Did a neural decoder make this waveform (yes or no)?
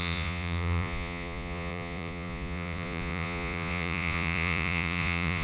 yes